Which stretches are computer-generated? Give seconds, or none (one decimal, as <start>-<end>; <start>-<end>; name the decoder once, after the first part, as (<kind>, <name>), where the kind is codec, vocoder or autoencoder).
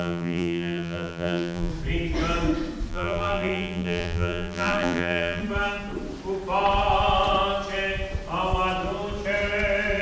0.0-1.7 (vocoder, BigVGAN v2); 2.9-5.4